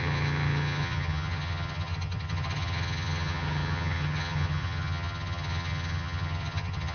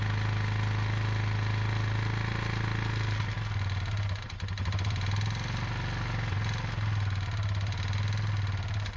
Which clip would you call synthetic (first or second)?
first